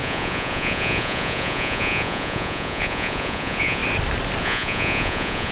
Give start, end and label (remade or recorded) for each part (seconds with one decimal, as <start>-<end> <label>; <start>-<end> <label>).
0.0-3.8 remade; 3.8-4.4 recorded; 4.4-5.5 remade